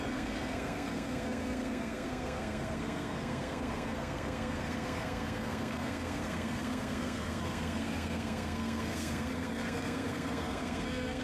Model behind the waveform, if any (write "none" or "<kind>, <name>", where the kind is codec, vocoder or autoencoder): codec, SNAC